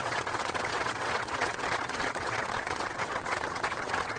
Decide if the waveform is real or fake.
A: fake